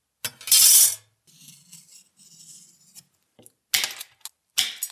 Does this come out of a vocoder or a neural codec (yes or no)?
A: no